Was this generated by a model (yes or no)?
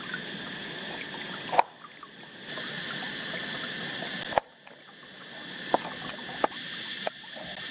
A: no